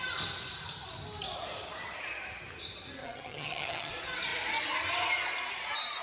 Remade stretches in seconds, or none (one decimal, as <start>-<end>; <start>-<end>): 3.0-3.9